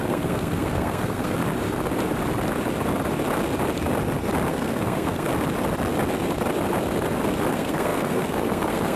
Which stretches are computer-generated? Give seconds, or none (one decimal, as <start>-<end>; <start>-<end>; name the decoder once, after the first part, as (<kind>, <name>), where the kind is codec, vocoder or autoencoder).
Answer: 0.0-1.4 (codec, SNAC); 4.5-5.3; 7.5-9.0

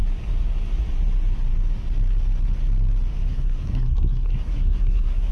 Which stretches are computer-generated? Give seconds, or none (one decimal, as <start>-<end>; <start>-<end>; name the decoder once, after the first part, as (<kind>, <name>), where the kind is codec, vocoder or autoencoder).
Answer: 3.2-5.3 (codec, SNAC)

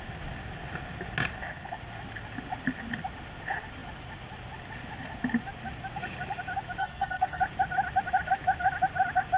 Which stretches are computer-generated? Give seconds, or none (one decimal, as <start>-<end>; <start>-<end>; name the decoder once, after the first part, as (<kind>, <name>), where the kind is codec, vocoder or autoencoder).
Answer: 6.8-7.4 (codec, SNAC)

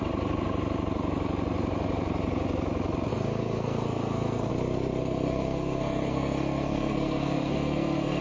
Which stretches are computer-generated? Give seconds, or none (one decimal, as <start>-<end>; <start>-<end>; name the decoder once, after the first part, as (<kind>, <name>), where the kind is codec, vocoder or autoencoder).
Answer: 3.1-4.5 (codec, SNAC); 5.0-8.2